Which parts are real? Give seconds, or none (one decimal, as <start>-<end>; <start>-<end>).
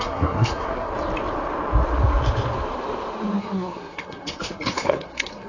0.9-3.4